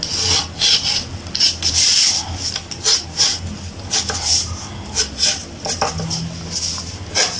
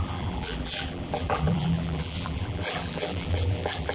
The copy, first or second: second